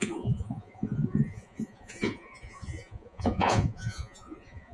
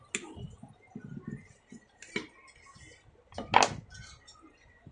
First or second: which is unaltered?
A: second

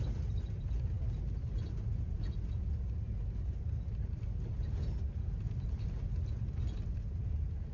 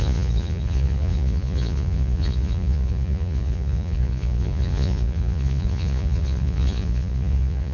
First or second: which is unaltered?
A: first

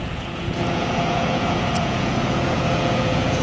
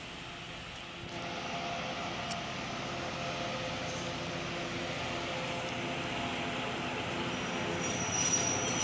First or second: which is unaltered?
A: second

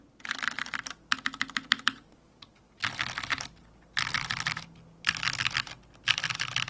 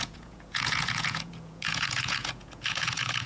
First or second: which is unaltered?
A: first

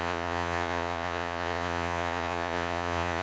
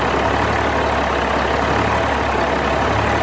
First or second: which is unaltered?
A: second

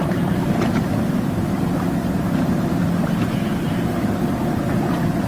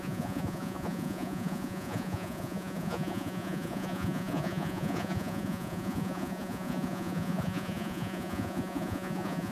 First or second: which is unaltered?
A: first